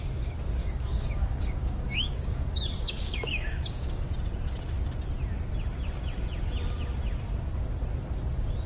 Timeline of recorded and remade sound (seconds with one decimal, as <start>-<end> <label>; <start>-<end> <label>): 0.0-0.6 recorded; 0.6-4.1 remade; 4.1-8.7 recorded